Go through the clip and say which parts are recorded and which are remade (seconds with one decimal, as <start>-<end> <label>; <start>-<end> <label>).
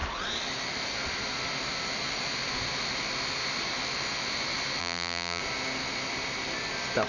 0.0-4.8 recorded; 4.8-5.4 remade; 5.4-7.1 recorded